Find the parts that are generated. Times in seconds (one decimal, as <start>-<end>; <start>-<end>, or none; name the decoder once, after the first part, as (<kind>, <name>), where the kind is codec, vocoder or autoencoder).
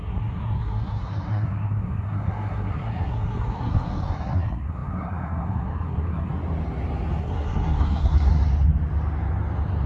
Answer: 0.0-6.3 (codec, SNAC); 7.2-8.3